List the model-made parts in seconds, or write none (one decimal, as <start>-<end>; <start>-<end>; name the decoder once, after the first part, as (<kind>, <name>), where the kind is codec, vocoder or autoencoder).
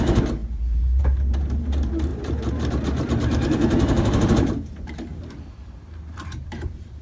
0.0-7.0 (vocoder, BigVGAN v2)